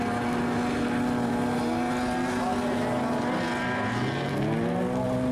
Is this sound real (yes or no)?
yes